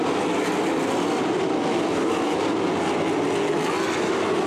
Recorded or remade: recorded